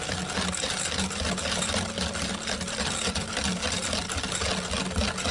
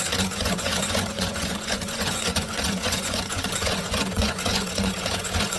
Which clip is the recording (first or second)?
first